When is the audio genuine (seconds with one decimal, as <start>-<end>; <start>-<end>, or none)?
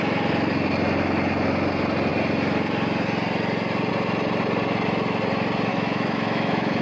0.0-5.7